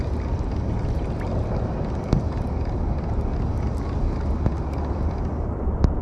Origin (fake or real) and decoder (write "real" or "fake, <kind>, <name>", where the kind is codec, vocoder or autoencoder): real